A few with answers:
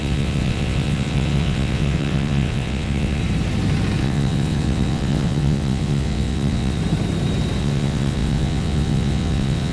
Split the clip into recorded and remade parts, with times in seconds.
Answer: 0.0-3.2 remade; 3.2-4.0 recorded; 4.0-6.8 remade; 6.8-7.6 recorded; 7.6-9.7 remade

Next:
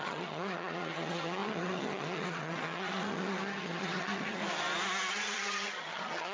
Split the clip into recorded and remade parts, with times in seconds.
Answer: 0.0-4.4 remade; 4.4-5.1 recorded; 5.1-6.3 remade

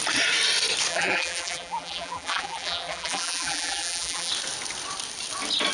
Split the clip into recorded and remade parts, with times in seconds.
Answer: 0.0-0.9 recorded; 0.9-4.3 remade; 4.3-5.7 recorded

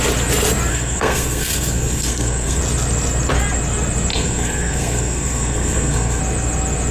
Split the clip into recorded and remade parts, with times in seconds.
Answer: 0.0-0.7 recorded; 0.7-2.6 remade; 2.6-4.1 recorded; 4.1-6.2 remade; 6.2-6.9 recorded

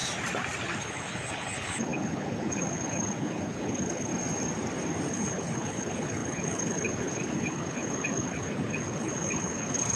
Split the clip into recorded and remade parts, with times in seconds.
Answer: 0.0-0.8 recorded; 0.8-4.1 remade; 4.1-5.1 recorded; 5.1-10.0 remade

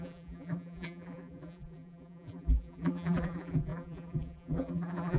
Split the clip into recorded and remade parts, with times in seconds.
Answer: 0.0-5.2 remade

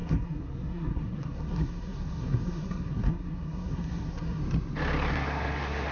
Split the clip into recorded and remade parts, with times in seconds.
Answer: 0.0-4.4 remade; 4.4-5.1 recorded; 5.1-5.9 remade